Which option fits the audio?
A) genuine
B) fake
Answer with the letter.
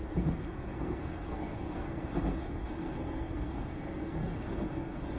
B